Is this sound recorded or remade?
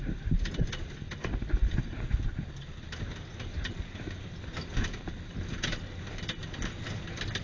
recorded